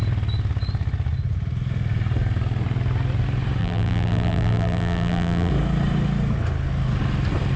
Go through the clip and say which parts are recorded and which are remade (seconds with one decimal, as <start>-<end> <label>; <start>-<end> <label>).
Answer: 0.0-3.6 recorded; 3.6-5.5 remade; 5.5-7.6 recorded